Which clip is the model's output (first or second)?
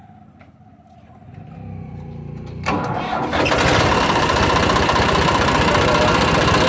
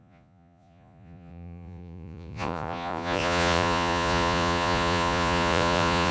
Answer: second